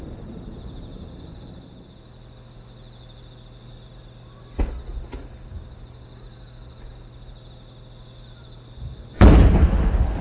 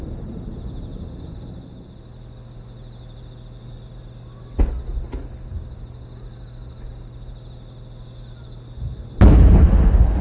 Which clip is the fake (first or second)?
first